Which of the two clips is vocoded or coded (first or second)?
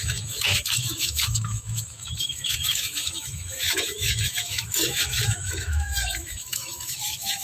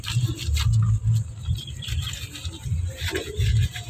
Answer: first